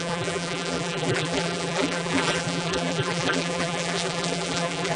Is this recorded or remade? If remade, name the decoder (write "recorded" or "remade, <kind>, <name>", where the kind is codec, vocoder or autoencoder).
remade, vocoder, BigVGAN v2